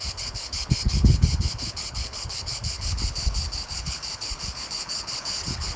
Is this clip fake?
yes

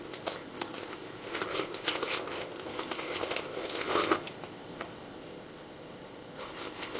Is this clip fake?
yes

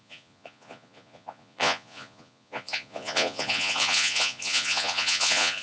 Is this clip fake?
yes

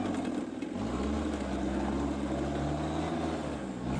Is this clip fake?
no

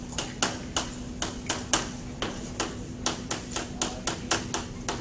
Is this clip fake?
no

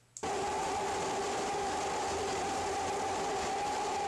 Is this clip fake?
no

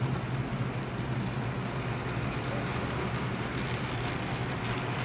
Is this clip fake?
no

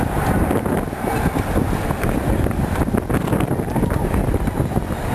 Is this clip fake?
no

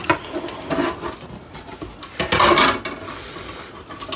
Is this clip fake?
no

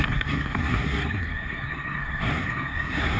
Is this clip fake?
yes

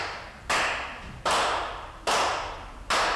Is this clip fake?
no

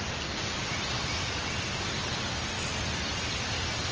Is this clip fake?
no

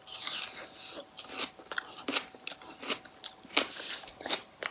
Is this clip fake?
no